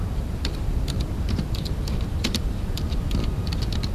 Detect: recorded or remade remade